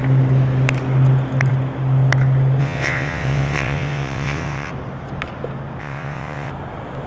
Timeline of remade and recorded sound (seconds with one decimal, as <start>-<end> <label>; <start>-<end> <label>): 0.0-2.6 recorded; 2.6-4.7 remade; 4.7-5.8 recorded; 5.8-6.5 remade; 6.5-7.1 recorded